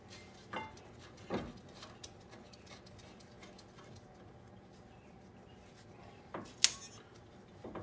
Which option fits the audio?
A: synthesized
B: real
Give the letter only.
B